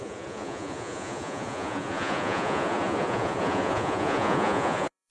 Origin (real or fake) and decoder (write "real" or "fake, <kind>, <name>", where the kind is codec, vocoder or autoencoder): fake, vocoder, Vocos